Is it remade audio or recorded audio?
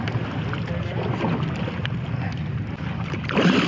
recorded